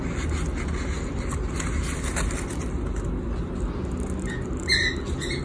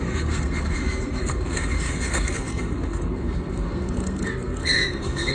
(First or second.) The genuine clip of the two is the first